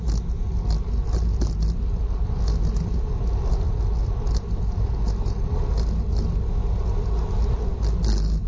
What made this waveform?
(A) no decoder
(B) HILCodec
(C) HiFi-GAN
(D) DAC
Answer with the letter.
A